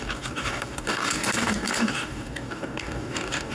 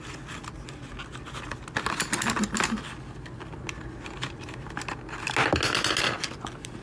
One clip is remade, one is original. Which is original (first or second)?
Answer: second